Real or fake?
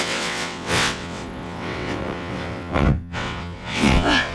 fake